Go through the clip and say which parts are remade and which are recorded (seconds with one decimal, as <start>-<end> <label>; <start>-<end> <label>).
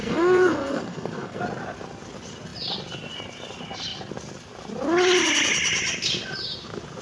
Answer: 0.0-1.4 remade; 1.4-7.0 recorded